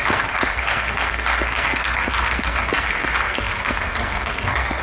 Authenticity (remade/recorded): remade